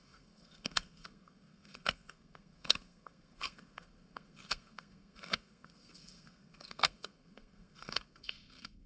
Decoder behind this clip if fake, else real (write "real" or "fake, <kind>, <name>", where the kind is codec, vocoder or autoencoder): fake, codec, SNAC